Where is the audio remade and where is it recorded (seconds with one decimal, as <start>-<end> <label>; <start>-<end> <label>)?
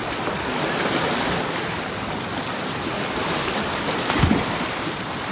0.0-5.3 recorded